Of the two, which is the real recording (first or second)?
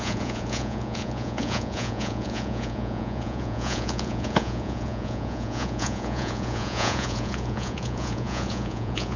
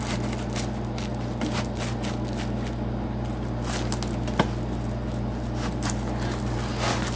second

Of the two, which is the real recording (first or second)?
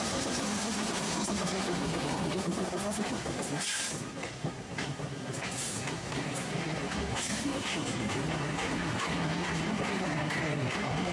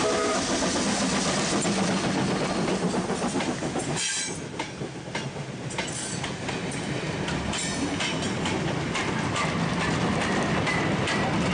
second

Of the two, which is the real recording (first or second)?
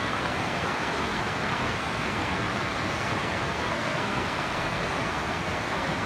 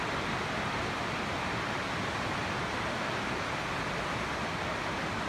second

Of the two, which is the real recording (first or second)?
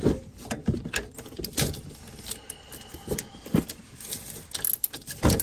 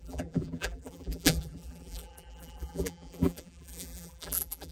first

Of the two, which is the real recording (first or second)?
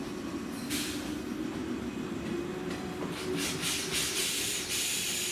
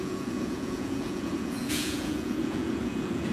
first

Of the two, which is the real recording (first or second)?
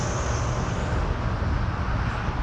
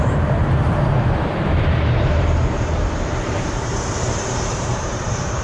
first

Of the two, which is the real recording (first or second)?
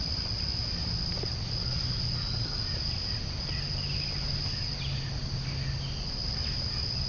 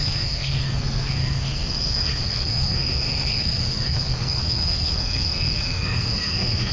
first